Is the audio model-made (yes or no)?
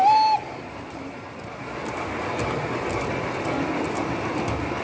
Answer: no